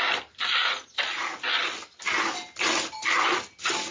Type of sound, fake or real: real